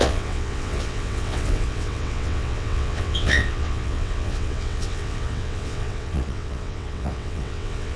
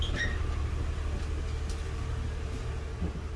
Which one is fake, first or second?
first